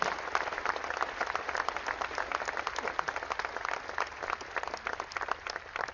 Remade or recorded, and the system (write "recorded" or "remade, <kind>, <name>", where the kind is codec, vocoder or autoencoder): recorded